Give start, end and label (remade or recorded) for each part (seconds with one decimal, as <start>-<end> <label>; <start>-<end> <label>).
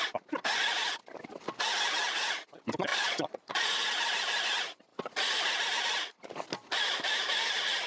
0.0-2.9 recorded; 2.9-3.7 remade; 3.7-7.9 recorded